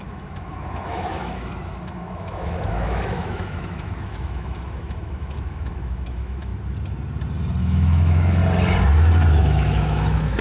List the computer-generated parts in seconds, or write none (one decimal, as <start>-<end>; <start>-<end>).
0.0-6.5; 7.6-8.4; 9.3-10.4